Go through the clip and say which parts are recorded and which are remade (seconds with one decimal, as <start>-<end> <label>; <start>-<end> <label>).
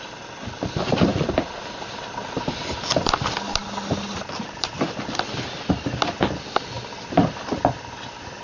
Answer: 0.0-8.4 recorded